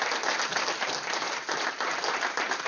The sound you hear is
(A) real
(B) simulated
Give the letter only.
A